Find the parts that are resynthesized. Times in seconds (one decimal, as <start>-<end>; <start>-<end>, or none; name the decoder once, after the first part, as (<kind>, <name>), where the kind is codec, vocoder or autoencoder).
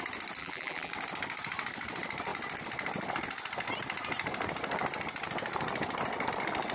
0.4-0.9 (vocoder, BigVGAN v2)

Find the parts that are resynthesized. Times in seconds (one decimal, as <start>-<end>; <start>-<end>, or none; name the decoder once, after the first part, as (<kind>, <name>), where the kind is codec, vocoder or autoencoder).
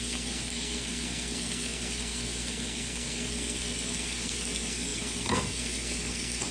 0.0-6.5 (codec, SNAC)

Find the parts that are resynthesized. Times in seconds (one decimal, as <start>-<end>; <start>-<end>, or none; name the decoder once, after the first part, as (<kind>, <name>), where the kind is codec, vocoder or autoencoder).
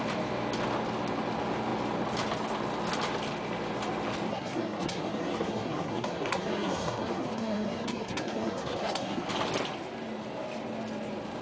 4.3-9.3 (codec, SNAC)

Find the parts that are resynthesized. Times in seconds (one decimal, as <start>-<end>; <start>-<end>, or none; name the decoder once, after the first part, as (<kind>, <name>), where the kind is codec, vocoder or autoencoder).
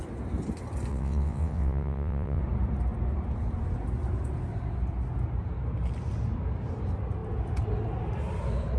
0.9-2.4 (vocoder, WaveNeXt)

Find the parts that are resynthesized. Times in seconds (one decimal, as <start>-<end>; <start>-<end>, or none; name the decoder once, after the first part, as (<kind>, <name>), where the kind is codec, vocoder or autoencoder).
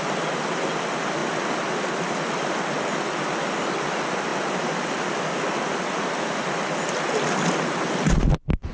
none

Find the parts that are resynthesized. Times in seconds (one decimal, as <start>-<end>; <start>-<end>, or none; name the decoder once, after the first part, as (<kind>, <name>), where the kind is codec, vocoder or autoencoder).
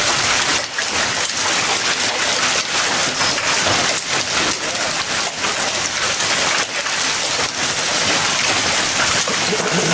none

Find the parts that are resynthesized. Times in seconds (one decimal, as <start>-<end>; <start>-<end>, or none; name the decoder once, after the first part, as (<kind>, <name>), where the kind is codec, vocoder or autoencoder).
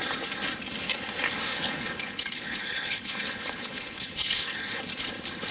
1.5-4.8 (codec, HILCodec)